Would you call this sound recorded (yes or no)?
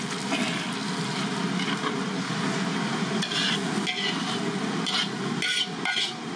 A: yes